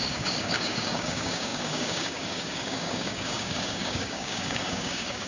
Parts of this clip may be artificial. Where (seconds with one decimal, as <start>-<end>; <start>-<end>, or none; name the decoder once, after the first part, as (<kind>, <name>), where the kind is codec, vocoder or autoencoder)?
0.0-5.3 (codec, DAC)